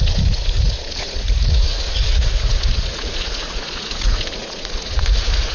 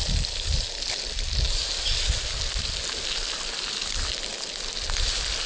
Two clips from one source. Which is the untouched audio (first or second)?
second